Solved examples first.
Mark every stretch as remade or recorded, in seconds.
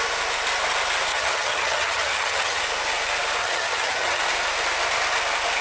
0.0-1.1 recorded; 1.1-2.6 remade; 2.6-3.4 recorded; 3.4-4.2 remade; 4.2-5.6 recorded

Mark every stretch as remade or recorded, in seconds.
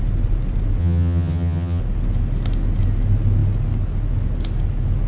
0.0-0.8 recorded; 0.8-1.8 remade; 1.8-5.1 recorded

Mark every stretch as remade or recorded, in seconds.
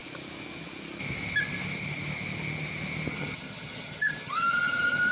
0.0-3.1 recorded; 3.1-5.1 remade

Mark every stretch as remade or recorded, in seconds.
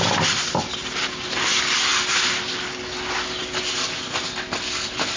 0.0-5.2 recorded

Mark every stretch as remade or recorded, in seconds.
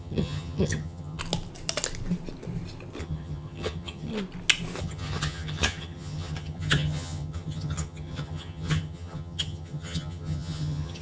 0.0-1.2 remade; 1.2-3.0 recorded; 3.0-4.1 remade; 4.1-4.8 recorded; 4.8-11.0 remade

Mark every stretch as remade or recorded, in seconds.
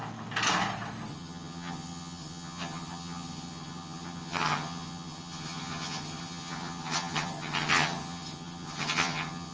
0.0-1.1 recorded; 1.1-9.5 remade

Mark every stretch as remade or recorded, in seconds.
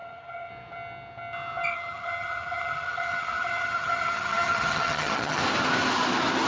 0.0-0.5 remade; 0.5-1.7 recorded; 1.7-5.4 remade; 5.4-6.5 recorded